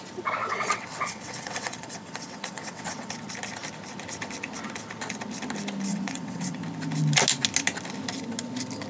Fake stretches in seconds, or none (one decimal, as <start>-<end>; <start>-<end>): 0.4-3.1; 5.9-6.6